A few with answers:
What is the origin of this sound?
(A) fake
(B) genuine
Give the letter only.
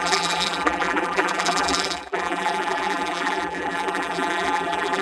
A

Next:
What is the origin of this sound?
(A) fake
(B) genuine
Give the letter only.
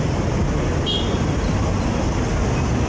B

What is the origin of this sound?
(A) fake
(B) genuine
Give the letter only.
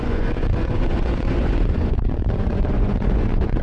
A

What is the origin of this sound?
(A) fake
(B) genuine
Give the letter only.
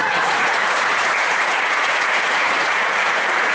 A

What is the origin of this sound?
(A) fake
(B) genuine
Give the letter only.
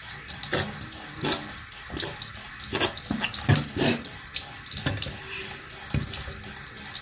B